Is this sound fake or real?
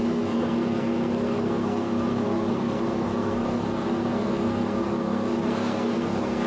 fake